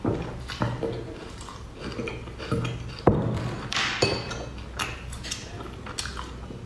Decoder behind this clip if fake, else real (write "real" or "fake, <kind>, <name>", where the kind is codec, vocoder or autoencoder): real